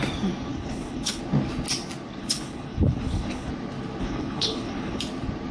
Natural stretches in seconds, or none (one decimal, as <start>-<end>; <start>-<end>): 0.0-0.5; 1.2-2.2; 3.5-4.0; 5.0-5.5